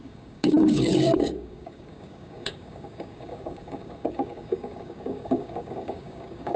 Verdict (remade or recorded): remade